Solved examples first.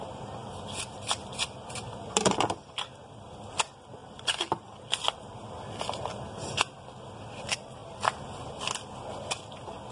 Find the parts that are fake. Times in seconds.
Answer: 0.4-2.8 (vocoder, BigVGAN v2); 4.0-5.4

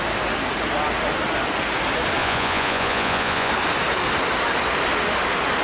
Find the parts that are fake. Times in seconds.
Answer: 2.2-3.5 (vocoder, Vocos)

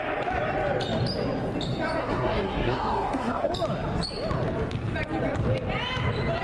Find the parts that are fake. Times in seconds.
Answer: 2.0-3.5 (codec, SNAC)

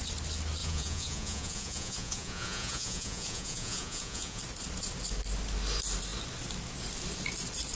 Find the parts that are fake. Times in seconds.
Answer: 0.6-4.4 (vocoder, Vocos)